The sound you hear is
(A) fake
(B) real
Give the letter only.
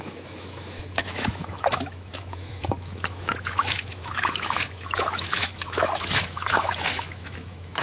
A